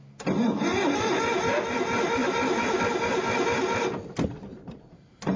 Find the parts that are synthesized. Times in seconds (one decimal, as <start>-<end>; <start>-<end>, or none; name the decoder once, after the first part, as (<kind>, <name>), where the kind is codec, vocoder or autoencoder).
2.2-2.8 (vocoder, BigVGAN v2); 4.5-5.4